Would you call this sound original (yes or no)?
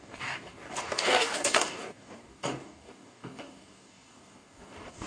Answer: no